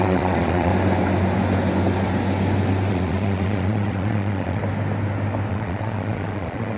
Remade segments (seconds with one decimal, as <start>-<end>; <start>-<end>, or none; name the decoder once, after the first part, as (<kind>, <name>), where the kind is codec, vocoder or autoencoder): 0.0-0.7 (vocoder, Vocos); 2.9-4.6; 5.5-6.8